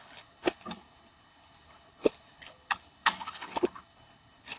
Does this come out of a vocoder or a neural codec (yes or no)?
yes